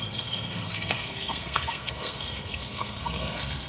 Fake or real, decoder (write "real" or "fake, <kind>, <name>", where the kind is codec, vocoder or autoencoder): fake, codec, SNAC